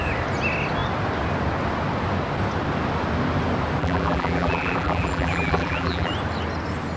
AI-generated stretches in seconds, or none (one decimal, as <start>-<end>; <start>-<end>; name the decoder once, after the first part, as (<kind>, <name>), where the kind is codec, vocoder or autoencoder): 3.8-6.1 (vocoder, BigVGAN v2)